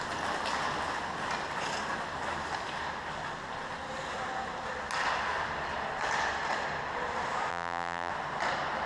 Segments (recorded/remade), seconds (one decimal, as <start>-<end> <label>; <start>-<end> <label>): 0.0-7.5 recorded; 7.5-8.1 remade; 8.1-8.9 recorded